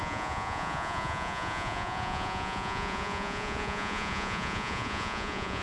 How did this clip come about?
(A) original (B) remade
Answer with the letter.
B